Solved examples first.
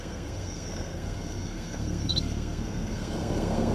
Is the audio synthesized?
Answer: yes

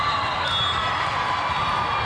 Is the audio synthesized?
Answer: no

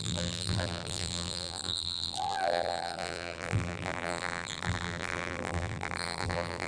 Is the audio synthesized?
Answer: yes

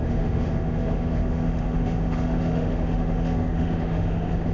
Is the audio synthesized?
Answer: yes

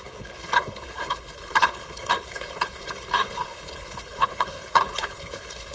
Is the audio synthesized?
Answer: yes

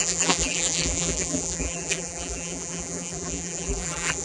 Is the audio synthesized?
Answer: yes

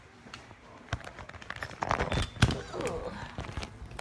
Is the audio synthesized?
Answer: no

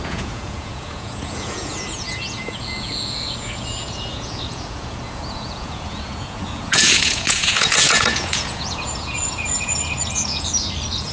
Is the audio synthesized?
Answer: yes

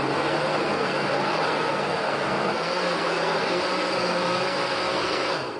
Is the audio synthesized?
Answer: yes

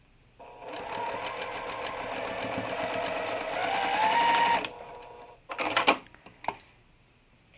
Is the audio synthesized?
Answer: no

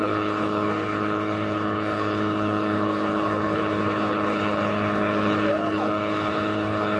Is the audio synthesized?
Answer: yes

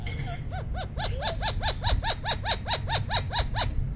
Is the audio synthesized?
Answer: no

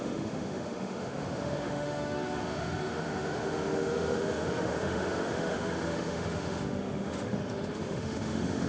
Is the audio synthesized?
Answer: yes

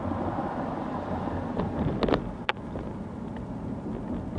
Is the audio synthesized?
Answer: no